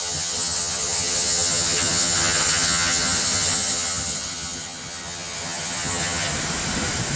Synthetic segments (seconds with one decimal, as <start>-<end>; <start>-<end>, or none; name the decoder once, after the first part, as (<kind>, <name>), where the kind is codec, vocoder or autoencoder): 0.0-6.3 (vocoder, HiFi-GAN)